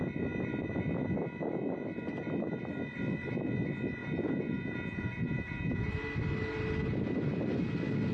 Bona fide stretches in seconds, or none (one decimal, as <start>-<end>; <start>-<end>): 0.0-4.0; 5.9-8.1